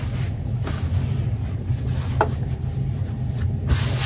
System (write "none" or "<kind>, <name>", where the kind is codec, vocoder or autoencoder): none